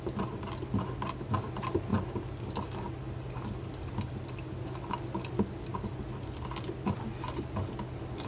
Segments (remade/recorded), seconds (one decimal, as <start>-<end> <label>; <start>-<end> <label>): 0.0-8.3 recorded